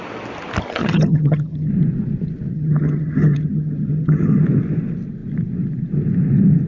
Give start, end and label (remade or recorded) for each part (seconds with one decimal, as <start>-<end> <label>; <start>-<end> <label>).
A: 0.0-0.8 recorded; 0.8-1.7 remade; 1.7-2.5 recorded; 2.5-4.4 remade; 4.4-6.7 recorded